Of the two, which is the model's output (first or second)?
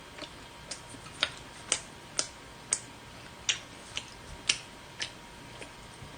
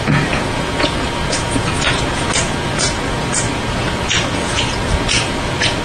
second